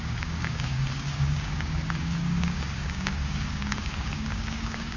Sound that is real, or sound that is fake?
fake